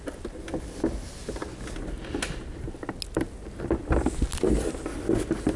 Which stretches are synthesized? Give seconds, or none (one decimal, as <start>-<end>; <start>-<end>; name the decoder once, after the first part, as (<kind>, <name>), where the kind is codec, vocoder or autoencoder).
none